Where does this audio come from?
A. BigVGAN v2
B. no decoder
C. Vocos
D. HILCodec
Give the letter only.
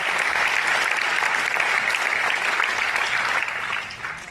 B